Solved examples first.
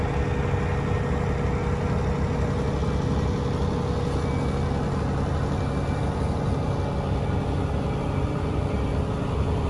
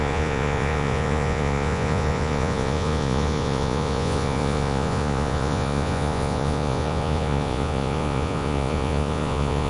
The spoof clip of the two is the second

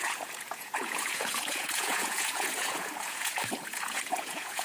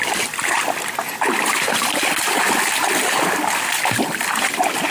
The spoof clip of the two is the first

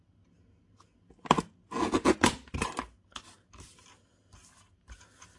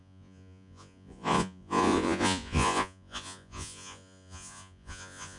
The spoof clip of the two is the second